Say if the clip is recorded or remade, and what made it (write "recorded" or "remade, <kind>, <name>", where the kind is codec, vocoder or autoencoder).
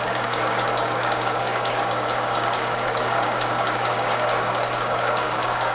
remade, codec, DAC